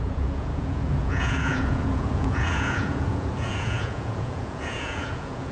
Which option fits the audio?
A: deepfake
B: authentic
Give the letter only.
A